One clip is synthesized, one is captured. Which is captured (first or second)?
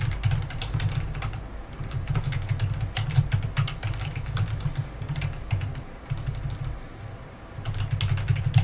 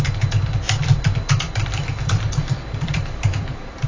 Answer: first